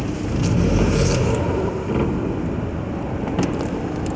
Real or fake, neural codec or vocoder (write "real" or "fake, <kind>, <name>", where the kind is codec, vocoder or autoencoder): real